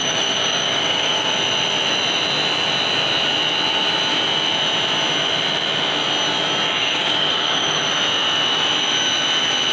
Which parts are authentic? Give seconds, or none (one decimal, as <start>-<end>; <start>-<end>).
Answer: 1.3-6.8; 7.8-9.7